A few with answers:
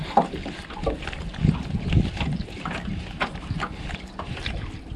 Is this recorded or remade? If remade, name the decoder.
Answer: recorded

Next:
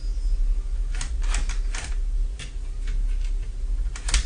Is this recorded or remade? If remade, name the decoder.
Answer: recorded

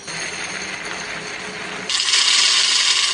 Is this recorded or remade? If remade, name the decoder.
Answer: recorded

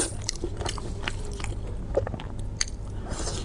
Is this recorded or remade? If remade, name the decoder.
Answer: recorded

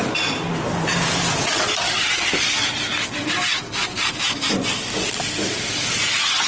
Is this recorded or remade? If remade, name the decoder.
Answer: recorded